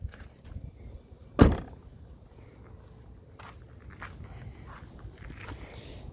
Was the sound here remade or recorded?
recorded